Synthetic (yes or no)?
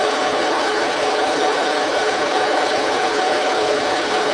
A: yes